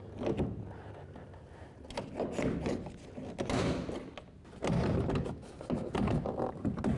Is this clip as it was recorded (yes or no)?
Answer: yes